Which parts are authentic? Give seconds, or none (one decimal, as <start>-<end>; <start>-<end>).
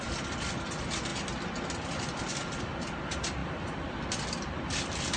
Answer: 0.0-5.2